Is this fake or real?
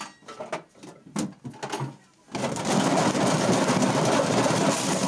real